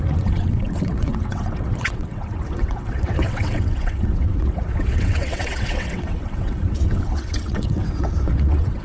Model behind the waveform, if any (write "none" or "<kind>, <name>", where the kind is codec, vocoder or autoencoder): vocoder, WaveNeXt